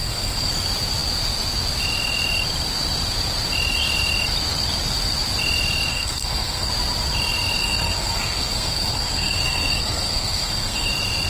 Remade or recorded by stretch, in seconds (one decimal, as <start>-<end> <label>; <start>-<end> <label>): 0.0-0.5 remade; 0.5-5.9 recorded; 5.9-6.7 remade; 6.7-7.6 recorded; 7.6-10.9 remade; 10.9-11.3 recorded